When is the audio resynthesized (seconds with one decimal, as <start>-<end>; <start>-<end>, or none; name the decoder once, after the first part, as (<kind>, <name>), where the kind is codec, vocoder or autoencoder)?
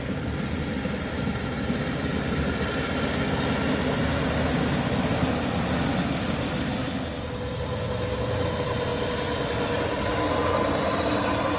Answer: none